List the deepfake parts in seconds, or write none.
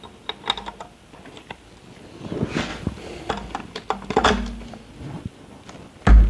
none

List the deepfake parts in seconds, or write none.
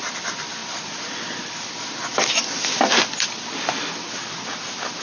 none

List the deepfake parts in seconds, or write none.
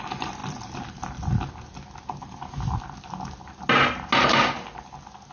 none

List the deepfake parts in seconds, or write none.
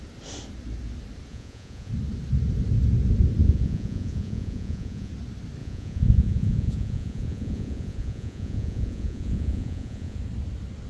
1.3-1.9 (vocoder, Vocos); 3.4-5.1; 5.6-10.2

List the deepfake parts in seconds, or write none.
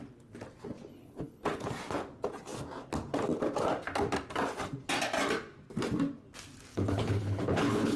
0.9-1.7 (codec, HILCodec); 6.7-8.0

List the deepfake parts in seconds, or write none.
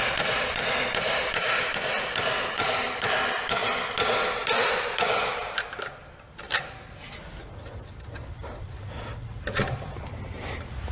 0.0-3.6 (vocoder, BigVGAN v2); 8.0-10.9